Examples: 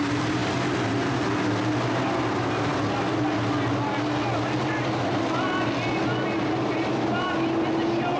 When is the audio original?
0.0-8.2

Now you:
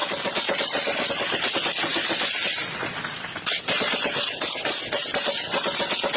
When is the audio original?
1.1-6.2

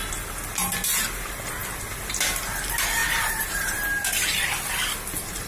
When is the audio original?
0.0-3.0; 4.4-5.5

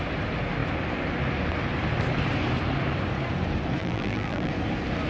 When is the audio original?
0.0-3.8; 4.5-5.1

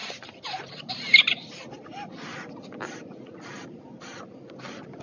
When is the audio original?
1.9-5.0